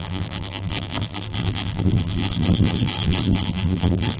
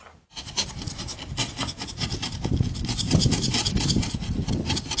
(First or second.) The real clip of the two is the second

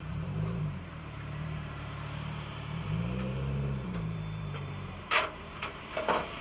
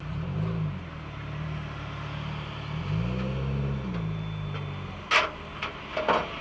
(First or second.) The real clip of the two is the second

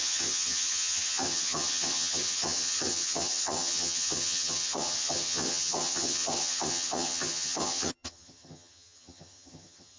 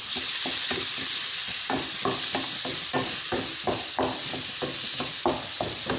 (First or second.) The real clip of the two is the second